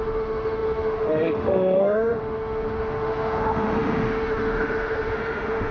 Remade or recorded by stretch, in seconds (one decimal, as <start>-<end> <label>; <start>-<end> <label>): 0.0-5.7 remade